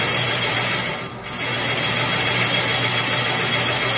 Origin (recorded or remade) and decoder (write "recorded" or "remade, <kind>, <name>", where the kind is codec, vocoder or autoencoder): recorded